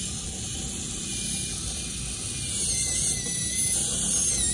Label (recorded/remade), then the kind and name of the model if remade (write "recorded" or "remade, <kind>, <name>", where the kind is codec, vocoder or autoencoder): recorded